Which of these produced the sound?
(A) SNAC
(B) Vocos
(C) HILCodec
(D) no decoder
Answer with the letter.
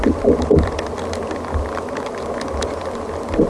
D